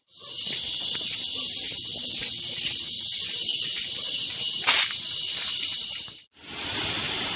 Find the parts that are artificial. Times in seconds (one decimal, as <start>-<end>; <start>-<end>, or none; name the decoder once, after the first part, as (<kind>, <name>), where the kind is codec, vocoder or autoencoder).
none